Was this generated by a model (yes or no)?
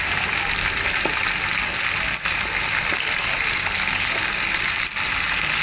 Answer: no